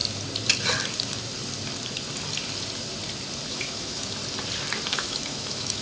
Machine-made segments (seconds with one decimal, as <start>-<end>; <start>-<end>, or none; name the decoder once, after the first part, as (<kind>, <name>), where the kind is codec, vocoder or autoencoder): 3.5-4.2 (autoencoder, DAC-VAE); 4.9-5.8